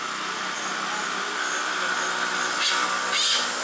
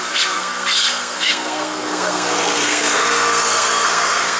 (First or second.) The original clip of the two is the first